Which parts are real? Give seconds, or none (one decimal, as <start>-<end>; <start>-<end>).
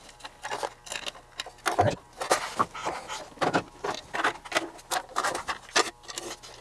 0.0-6.6